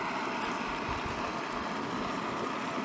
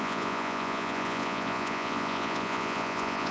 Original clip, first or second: first